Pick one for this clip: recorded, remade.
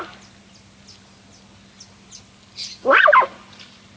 recorded